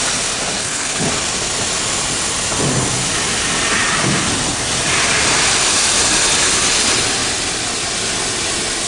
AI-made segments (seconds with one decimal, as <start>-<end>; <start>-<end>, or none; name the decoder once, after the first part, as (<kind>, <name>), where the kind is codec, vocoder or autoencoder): 0.6-1.1 (codec, HILCodec)